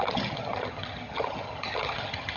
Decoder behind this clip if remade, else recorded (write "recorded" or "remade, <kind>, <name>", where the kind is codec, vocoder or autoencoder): remade, vocoder, HiFi-GAN